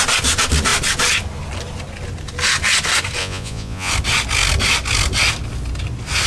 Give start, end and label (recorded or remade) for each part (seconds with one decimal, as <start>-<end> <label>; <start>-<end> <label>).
0.0-3.2 recorded; 3.2-3.9 remade; 3.9-6.3 recorded